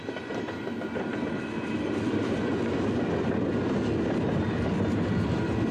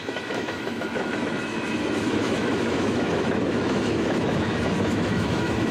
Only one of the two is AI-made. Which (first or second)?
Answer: second